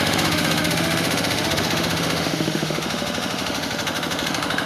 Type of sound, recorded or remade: remade